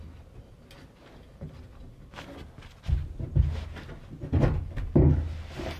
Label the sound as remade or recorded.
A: recorded